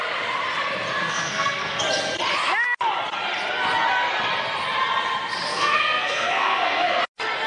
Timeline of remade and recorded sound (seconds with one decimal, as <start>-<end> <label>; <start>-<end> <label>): 0.0-1.0 recorded; 1.0-1.8 remade; 1.8-5.5 recorded; 5.5-7.0 remade; 7.0-7.5 recorded